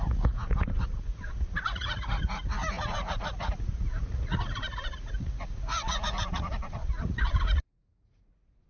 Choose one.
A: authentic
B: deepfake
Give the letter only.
B